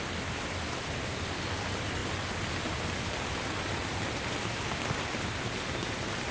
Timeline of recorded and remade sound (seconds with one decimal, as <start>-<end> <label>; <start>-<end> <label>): 0.0-6.3 recorded